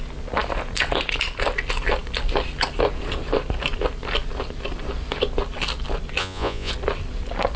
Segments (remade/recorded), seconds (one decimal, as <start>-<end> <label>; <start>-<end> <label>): 0.0-6.2 recorded; 6.2-6.7 remade; 6.7-7.6 recorded